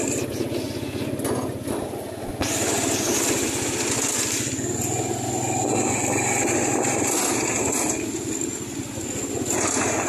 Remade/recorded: recorded